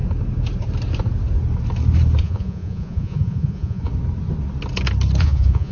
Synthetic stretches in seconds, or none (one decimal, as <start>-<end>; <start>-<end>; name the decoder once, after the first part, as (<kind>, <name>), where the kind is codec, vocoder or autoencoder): 2.2-3.9 (vocoder, Vocos); 5.2-5.7